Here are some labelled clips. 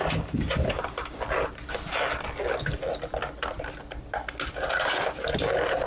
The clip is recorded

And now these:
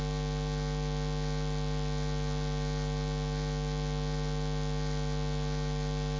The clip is recorded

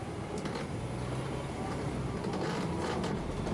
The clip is remade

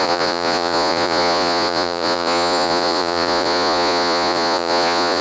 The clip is remade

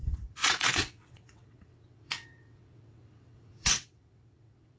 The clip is remade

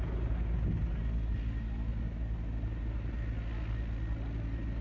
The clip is recorded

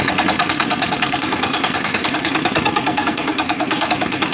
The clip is remade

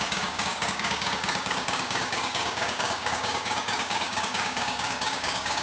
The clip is remade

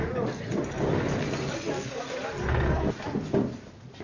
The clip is recorded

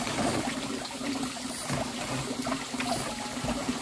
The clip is recorded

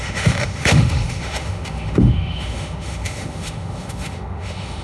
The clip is remade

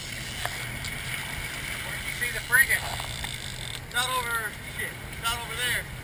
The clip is recorded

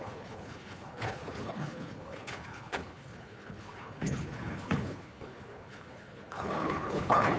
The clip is remade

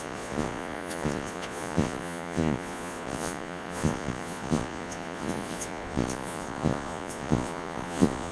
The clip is remade